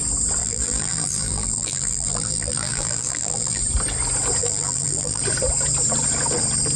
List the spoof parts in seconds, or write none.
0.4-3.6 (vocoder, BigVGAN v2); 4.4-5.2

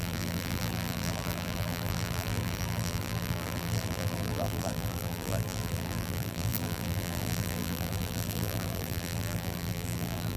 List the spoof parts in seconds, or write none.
0.0-10.4 (vocoder, BigVGAN v2)

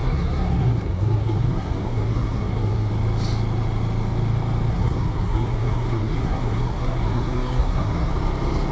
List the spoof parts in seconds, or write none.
0.0-2.9 (codec, SNAC); 4.7-8.1

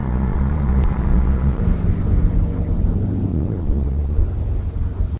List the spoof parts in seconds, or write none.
0.0-1.6 (vocoder, Vocos); 3.3-4.2

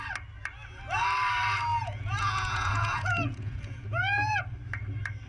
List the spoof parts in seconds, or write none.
1.7-4.4 (vocoder, Vocos)